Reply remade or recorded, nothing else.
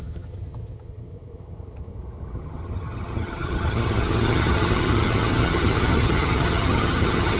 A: remade